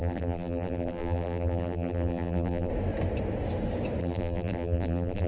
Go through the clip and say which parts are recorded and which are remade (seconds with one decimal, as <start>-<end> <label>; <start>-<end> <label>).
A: 0.0-2.7 remade; 2.7-4.0 recorded; 4.0-5.3 remade